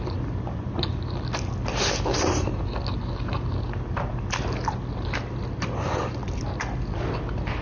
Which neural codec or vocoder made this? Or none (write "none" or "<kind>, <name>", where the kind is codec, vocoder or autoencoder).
vocoder, BigVGAN v2